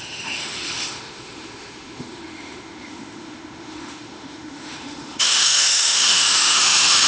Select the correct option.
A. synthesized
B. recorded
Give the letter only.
A